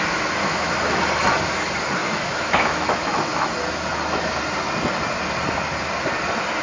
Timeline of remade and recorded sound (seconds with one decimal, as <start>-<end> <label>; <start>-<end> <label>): 0.0-0.4 recorded; 0.4-1.0 remade; 1.0-2.0 recorded; 2.0-3.5 remade; 3.5-6.6 recorded